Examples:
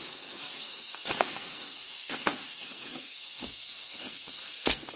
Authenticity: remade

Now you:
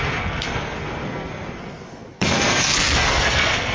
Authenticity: remade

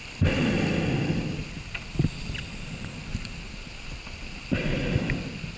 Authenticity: recorded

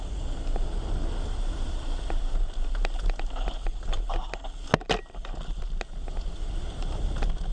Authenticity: recorded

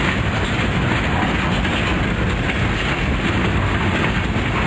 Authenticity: recorded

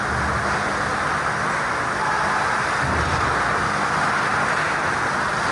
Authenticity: recorded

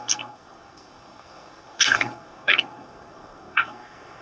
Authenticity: remade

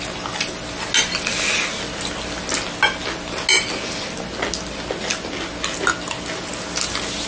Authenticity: recorded